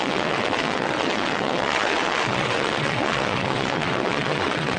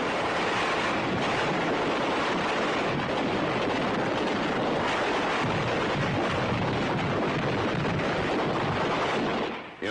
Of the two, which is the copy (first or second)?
first